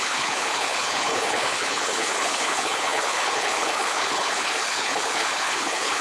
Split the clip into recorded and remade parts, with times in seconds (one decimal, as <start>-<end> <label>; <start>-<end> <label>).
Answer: 0.0-6.0 remade